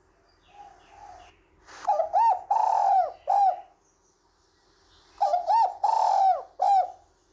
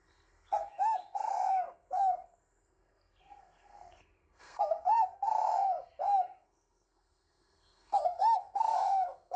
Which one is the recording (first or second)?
first